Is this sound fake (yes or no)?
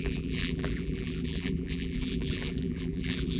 yes